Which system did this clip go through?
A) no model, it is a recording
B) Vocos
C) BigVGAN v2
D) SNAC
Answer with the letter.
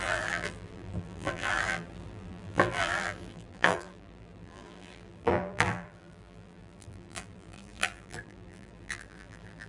C